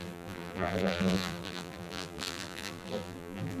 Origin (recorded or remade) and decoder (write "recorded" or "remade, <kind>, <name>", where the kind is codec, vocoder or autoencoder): remade, vocoder, BigVGAN v2